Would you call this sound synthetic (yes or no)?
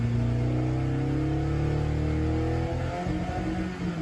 no